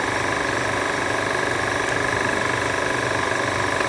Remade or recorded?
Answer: recorded